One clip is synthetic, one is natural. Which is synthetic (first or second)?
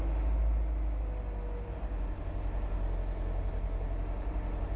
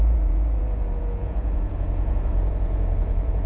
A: second